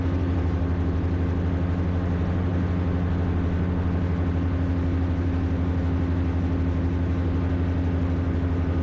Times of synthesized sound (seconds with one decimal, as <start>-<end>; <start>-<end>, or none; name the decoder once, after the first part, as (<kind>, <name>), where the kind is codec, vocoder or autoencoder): none